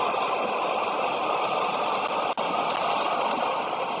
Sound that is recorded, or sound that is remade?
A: recorded